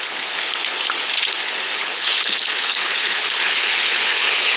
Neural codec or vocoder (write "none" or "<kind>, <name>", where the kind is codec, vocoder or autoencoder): codec, HILCodec